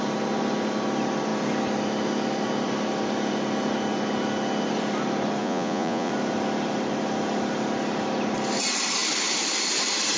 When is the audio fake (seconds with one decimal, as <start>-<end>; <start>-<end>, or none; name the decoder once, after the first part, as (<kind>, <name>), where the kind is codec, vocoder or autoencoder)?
5.4-6.1 (vocoder, Vocos)